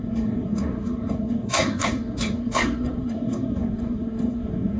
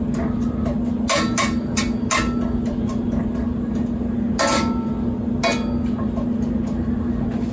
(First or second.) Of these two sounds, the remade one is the first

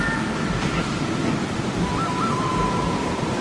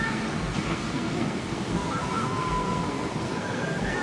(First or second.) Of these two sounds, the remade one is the second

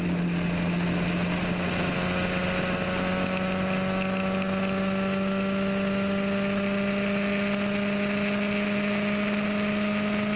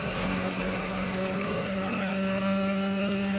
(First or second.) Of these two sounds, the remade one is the second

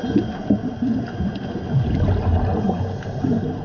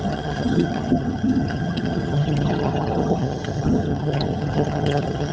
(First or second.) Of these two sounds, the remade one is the second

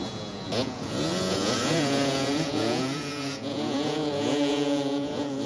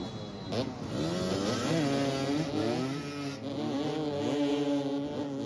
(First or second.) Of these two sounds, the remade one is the first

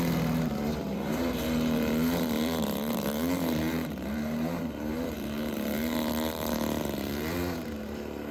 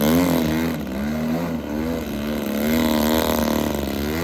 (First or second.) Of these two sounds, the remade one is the first